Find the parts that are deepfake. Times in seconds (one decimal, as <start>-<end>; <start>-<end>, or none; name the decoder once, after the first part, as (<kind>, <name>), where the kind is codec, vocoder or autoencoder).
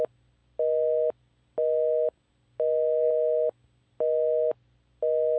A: none